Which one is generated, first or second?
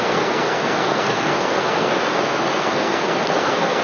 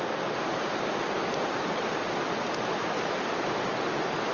first